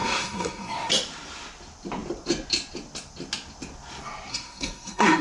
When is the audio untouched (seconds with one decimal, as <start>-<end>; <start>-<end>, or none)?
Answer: 0.9-4.3